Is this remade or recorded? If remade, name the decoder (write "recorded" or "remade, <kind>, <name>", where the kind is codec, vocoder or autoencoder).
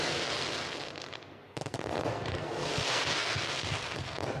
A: remade, codec, SNAC